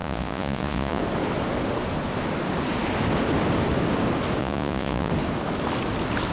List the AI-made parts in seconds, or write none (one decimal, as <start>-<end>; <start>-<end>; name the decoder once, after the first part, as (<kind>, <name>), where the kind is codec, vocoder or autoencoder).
0.0-1.0 (vocoder, Vocos); 4.4-5.1